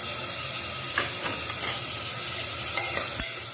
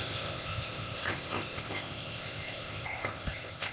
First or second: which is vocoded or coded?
second